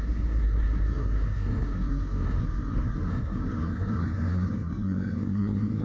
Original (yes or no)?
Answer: no